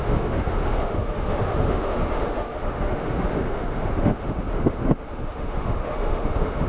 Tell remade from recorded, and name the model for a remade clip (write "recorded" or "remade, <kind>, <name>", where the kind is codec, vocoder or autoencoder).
remade, autoencoder, DAC-VAE